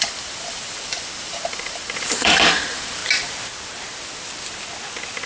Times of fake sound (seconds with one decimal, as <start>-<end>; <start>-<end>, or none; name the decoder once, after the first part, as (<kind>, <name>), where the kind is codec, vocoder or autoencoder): 0.0-3.0 (vocoder, BigVGAN v2)